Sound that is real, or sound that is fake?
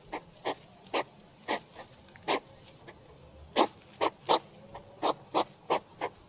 real